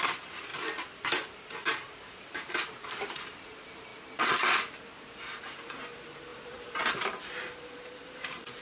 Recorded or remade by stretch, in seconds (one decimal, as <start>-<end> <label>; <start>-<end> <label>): 0.0-0.5 remade; 0.5-1.3 recorded; 1.3-3.9 remade; 3.9-5.4 recorded; 5.4-8.6 remade